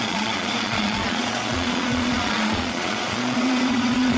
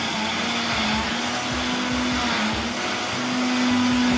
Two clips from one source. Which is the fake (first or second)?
first